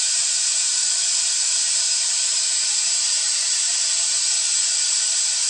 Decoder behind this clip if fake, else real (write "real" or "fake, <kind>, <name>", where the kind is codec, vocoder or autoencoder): fake, vocoder, BigVGAN v2